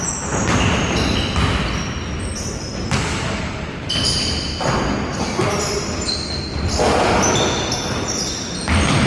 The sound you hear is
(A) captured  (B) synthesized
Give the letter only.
A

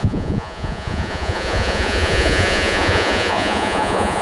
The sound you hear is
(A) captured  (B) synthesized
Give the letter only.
B